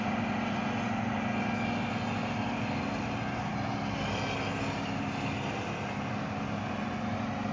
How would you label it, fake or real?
real